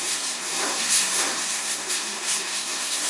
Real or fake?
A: fake